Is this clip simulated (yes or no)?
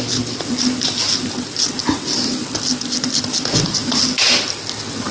no